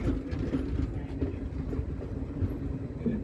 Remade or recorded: recorded